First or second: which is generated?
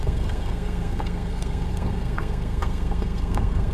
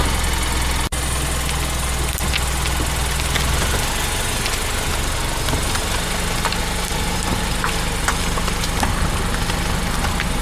first